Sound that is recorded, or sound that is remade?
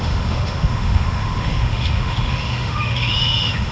remade